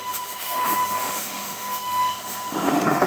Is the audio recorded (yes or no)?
no